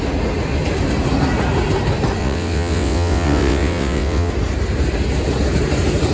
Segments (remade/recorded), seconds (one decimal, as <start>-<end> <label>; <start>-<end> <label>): 0.0-2.2 recorded; 2.2-4.3 remade; 4.3-6.1 recorded